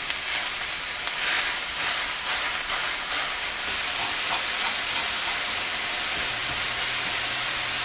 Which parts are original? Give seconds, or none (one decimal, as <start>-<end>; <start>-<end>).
0.0-7.8

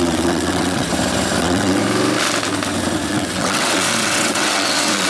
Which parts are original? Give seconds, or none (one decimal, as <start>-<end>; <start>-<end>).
0.9-1.4; 1.8-3.1

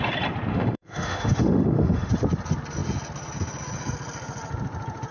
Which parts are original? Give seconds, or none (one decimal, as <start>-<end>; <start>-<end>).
0.0-0.5; 2.1-5.1

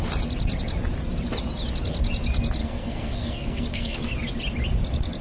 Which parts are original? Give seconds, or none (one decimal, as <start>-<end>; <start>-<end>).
0.0-2.6; 4.1-5.2

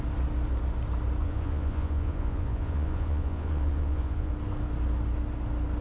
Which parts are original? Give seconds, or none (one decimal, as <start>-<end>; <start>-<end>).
0.0-1.2; 4.3-5.8

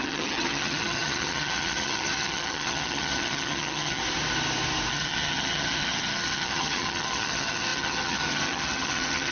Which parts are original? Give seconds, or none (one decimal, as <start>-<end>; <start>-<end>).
4.0-4.9

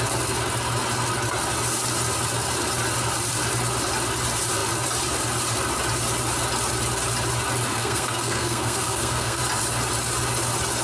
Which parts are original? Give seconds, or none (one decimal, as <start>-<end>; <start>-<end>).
0.0-7.7; 9.4-10.8